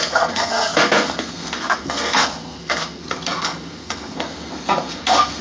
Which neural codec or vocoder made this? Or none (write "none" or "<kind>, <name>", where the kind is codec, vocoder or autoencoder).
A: codec, SNAC